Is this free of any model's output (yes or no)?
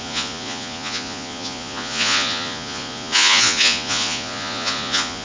no